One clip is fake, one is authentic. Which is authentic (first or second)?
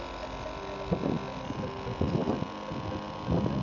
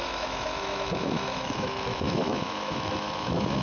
first